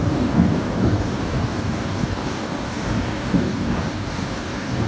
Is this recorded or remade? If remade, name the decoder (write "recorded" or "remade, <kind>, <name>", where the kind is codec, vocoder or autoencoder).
remade, codec, DAC